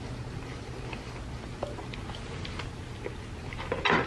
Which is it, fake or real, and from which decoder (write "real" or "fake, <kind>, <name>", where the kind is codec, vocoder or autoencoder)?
real